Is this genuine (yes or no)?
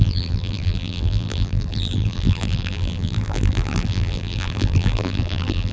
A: no